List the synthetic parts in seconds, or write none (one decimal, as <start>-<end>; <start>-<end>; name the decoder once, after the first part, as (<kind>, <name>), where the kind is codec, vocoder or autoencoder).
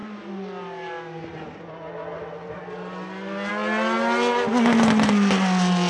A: none